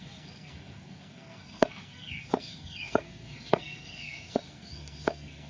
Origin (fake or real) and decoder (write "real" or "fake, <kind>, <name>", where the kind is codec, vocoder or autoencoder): fake, codec, SNAC